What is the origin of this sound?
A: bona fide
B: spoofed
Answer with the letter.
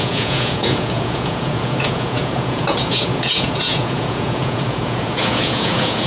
B